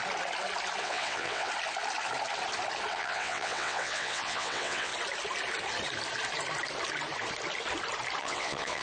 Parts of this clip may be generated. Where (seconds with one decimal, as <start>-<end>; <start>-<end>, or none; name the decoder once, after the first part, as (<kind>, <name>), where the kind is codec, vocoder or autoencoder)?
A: 0.8-1.5 (vocoder, WaveNeXt); 2.9-4.9; 8.2-8.8